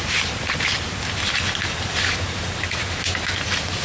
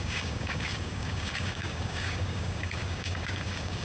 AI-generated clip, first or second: second